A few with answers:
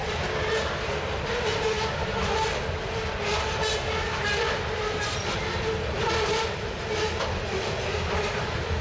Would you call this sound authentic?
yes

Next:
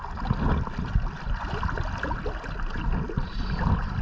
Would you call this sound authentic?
yes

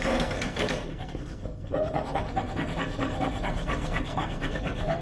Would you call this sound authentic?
no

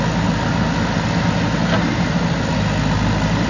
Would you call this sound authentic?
yes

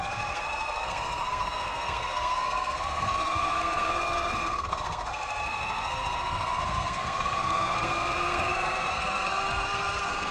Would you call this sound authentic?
no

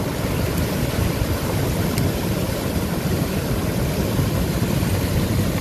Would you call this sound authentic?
yes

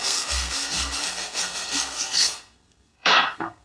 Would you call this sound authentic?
no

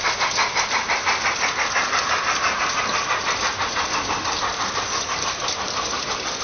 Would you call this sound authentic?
yes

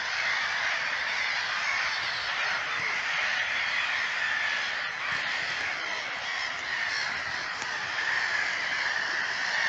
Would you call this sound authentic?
yes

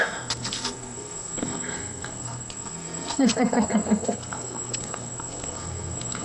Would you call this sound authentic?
no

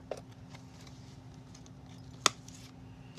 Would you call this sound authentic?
yes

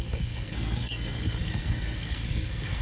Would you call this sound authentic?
no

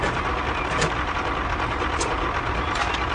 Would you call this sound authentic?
yes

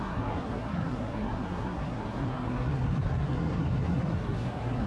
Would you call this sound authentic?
no